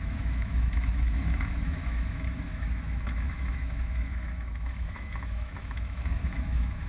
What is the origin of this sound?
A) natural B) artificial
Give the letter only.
B